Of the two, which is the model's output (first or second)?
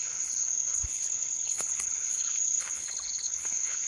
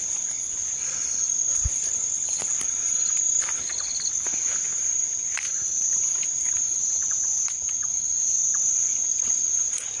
first